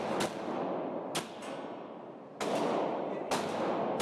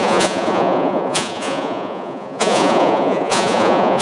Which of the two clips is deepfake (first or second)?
second